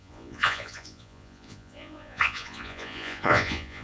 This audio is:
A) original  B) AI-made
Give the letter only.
B